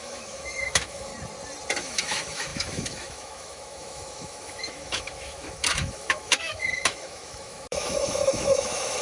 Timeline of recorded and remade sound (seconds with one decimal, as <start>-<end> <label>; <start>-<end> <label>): 0.0-1.1 remade; 1.1-1.8 recorded; 1.8-9.0 remade